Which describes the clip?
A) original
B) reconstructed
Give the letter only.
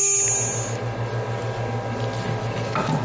A